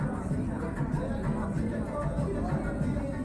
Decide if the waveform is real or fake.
real